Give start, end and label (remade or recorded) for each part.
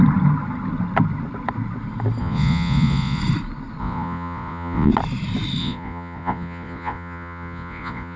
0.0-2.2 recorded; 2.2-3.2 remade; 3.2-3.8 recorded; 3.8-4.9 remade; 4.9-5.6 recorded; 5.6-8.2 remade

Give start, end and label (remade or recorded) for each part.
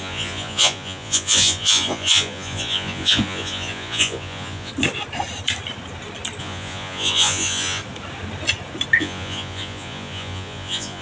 0.0-4.7 remade; 4.7-6.4 recorded; 6.4-7.8 remade; 7.8-9.0 recorded; 9.0-11.0 remade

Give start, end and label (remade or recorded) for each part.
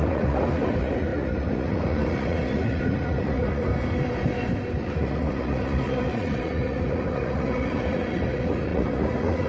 0.0-3.7 remade; 3.7-4.8 recorded; 4.8-9.5 remade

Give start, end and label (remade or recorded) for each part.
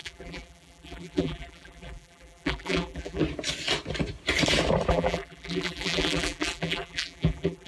0.0-3.2 remade; 3.2-4.9 recorded; 4.9-7.7 remade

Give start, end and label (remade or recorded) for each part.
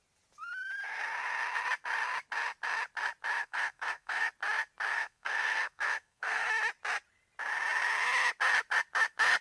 0.0-3.4 recorded; 3.4-4.3 remade; 4.3-4.9 recorded; 4.9-6.5 remade; 6.5-9.4 recorded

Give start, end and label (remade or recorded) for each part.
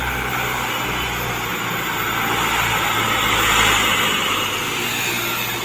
0.0-5.6 recorded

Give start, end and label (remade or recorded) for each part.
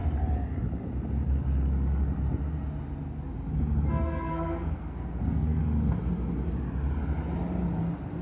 0.0-4.3 recorded; 4.3-5.6 remade; 5.6-8.2 recorded